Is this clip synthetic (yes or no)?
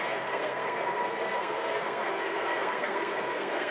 yes